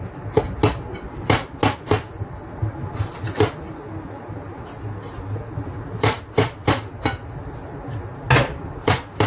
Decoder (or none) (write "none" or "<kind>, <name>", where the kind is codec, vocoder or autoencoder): none